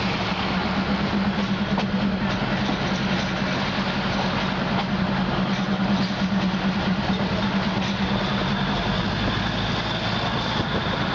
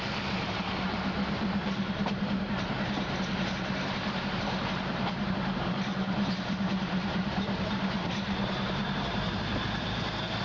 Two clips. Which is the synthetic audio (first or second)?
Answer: second